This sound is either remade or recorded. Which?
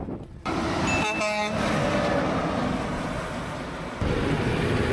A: recorded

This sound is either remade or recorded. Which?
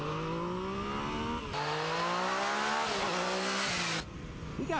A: recorded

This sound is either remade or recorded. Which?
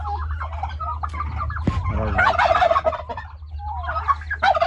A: recorded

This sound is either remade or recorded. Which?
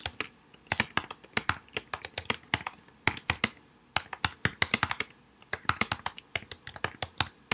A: recorded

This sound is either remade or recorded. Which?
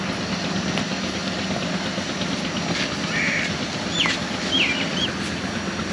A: recorded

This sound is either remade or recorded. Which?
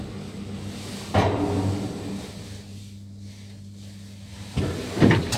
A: recorded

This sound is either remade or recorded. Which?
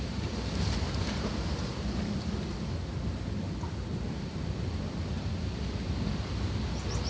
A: recorded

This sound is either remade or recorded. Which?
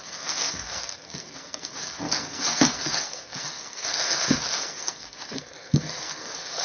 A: remade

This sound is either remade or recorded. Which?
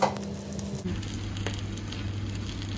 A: recorded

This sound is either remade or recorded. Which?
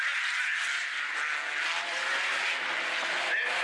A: recorded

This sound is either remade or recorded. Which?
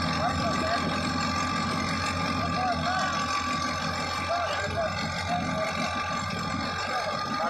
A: recorded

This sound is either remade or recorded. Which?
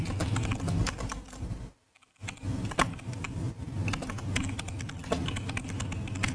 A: recorded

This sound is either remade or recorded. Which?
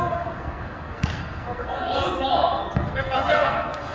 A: remade